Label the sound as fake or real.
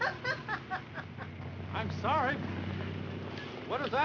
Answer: real